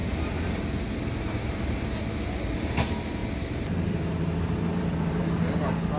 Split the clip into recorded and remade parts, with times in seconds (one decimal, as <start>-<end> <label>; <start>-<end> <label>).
0.0-3.2 recorded; 3.2-5.2 remade; 5.2-6.0 recorded